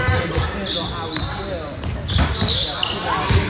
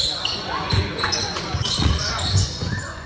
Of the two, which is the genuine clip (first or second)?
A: first